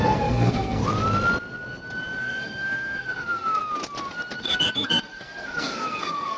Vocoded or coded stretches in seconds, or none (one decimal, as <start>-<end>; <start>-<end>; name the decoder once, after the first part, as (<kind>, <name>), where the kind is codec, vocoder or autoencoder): 0.0-0.8 (codec, SNAC); 2.2-3.6; 4.4-6.4